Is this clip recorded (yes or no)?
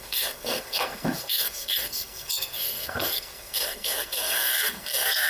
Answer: no